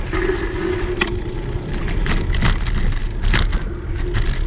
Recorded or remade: recorded